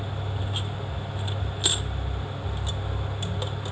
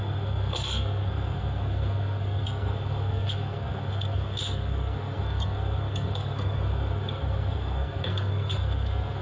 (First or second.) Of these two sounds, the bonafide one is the first